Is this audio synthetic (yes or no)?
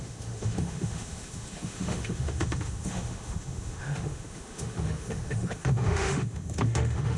yes